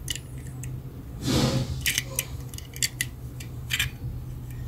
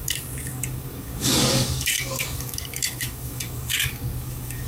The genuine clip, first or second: first